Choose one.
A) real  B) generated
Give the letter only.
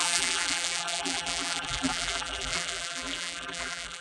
B